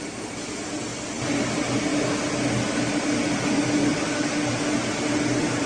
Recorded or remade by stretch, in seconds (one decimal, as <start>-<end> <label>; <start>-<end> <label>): 0.0-5.7 recorded